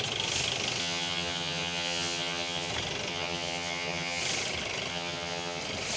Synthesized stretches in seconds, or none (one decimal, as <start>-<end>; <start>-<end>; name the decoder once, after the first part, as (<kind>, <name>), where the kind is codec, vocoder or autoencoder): 0.8-2.7 (vocoder, HiFi-GAN); 3.1-4.2; 4.9-5.6